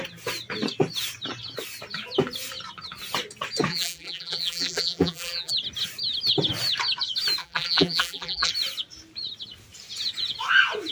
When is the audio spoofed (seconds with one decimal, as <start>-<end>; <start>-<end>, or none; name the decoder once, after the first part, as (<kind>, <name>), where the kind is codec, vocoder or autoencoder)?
3.7-5.5 (vocoder, BigVGAN v2); 7.4-8.5